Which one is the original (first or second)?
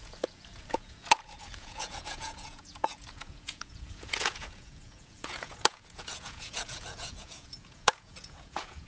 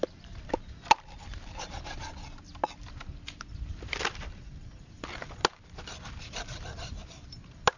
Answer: second